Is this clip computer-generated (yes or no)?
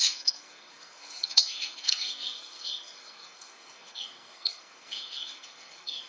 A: yes